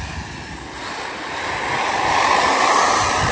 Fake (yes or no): no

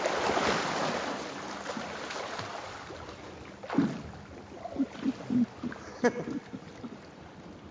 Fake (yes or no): no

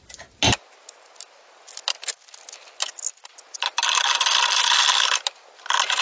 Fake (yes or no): no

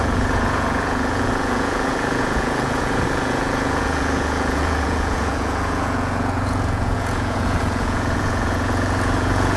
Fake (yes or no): yes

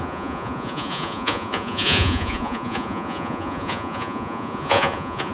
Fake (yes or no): yes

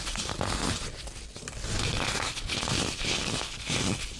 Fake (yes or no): no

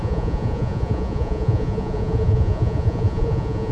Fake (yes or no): yes